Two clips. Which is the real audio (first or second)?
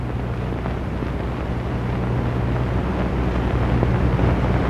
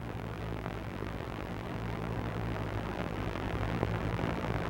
first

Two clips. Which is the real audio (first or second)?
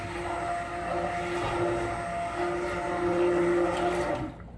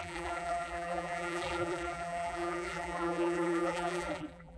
first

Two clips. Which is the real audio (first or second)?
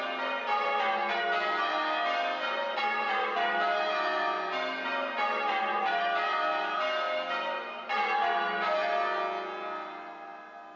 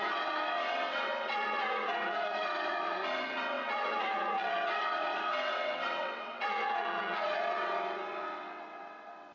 first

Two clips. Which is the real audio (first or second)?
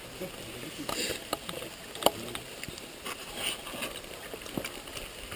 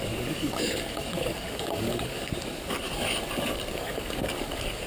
first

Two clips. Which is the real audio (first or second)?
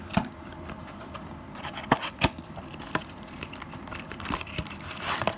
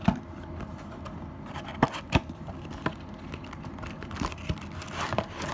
second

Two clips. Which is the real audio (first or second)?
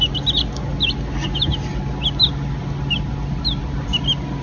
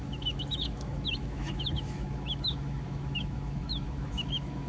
first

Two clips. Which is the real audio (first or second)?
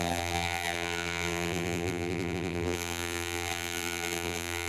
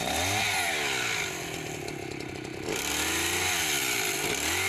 second